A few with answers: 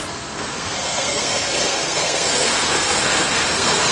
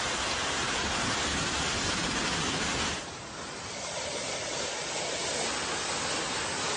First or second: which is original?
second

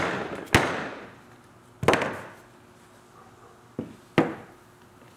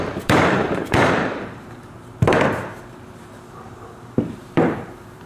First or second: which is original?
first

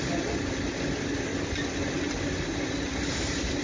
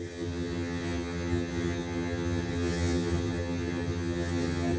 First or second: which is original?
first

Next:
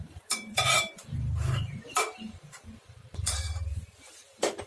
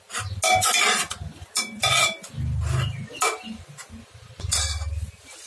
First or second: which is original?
second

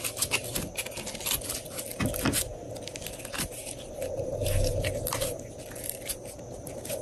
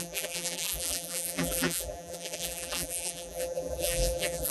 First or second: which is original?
first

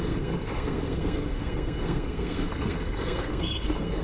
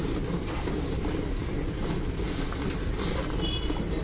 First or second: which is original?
second